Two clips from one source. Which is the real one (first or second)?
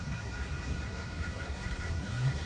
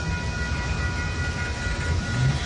second